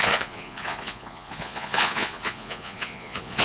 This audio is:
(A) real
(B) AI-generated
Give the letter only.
B